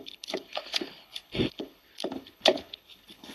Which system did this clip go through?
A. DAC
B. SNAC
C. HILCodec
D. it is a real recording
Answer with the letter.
C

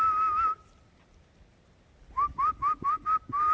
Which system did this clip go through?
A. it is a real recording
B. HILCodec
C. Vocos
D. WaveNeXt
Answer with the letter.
A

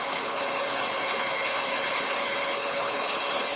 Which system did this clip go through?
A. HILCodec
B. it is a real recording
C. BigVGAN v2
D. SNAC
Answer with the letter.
A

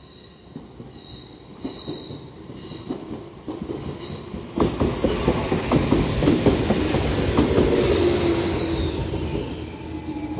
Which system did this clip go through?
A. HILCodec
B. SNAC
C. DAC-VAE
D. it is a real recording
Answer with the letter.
D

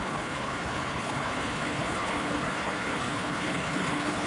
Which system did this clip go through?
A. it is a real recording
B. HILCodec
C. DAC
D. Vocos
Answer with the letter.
B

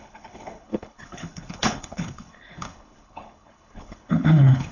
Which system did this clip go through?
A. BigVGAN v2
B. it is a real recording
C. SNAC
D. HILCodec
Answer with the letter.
D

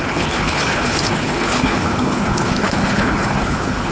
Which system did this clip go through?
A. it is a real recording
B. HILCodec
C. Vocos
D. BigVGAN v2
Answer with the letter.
B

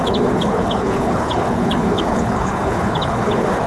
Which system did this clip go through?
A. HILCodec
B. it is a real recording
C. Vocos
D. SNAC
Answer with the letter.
A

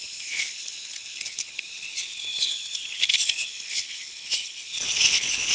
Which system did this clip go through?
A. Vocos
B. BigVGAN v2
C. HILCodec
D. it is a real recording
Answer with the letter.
C